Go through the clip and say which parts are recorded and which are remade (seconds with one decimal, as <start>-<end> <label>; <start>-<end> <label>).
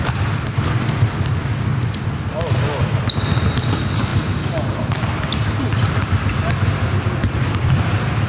0.0-8.3 recorded